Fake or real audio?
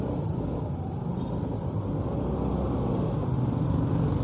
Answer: real